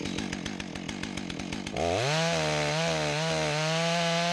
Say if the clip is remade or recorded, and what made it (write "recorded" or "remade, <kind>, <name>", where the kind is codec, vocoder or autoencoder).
recorded